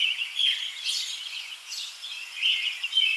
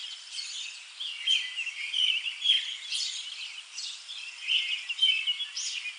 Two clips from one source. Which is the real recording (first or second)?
second